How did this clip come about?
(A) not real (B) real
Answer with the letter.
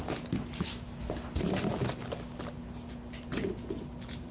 B